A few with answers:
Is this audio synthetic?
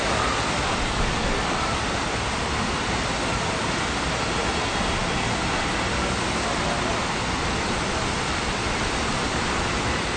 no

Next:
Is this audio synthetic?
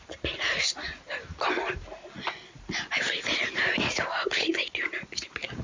no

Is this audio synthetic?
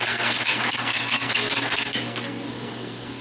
yes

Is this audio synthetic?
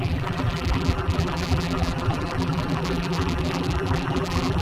yes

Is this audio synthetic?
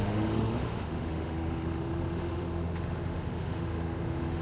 yes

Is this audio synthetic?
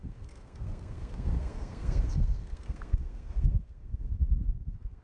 yes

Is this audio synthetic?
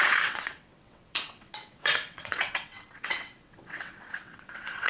yes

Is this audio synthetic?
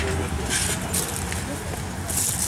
no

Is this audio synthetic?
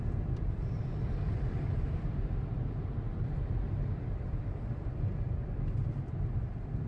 yes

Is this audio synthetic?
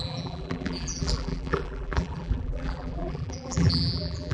yes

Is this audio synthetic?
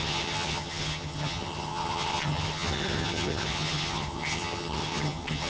yes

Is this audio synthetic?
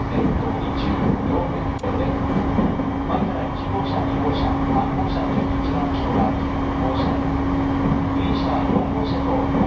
no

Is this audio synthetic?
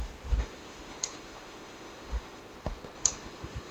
yes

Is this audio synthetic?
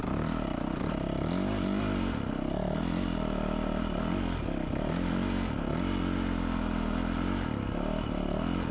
no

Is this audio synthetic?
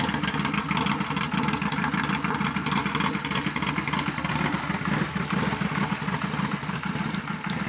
no